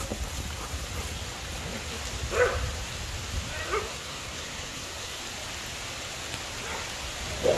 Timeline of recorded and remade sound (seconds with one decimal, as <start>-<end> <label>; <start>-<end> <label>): 0.0-3.9 recorded; 3.9-5.2 remade; 5.2-7.6 recorded

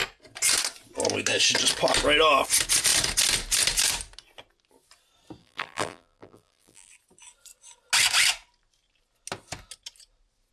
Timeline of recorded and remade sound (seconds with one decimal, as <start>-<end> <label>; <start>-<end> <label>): 0.0-5.4 recorded; 5.4-6.9 remade; 6.9-10.5 recorded

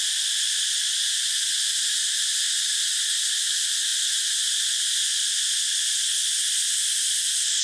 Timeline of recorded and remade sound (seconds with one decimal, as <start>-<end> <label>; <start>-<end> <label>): 0.0-7.6 recorded

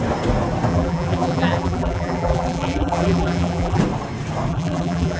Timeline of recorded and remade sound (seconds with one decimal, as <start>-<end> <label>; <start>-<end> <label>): 0.0-0.7 recorded; 0.7-3.8 remade; 3.8-4.5 recorded; 4.5-5.2 remade

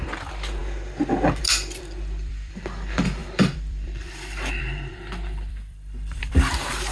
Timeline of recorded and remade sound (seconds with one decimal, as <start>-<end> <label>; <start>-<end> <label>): 0.0-0.6 remade; 0.6-1.4 recorded; 1.4-6.9 remade